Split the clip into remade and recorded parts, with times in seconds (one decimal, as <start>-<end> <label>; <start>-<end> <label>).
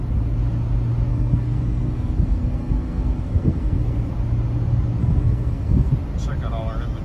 0.0-1.1 recorded; 1.1-4.1 remade; 4.1-5.0 recorded; 5.0-5.9 remade; 5.9-7.0 recorded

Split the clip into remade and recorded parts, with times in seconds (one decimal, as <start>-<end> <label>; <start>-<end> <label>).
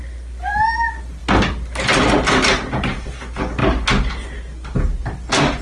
0.0-5.6 recorded